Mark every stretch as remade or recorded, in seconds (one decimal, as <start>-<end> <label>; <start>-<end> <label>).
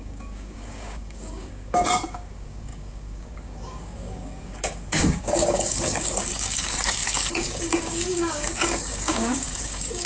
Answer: 0.0-10.1 remade